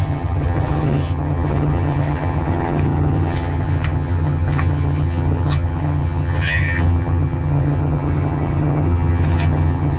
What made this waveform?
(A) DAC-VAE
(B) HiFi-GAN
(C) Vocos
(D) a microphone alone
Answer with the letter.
B